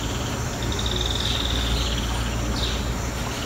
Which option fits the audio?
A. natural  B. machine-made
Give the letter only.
A